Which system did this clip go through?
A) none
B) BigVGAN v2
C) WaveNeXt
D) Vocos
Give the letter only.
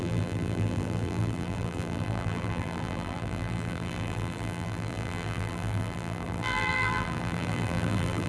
B